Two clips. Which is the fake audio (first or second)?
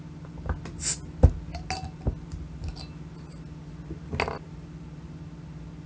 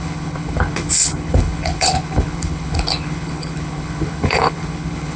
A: second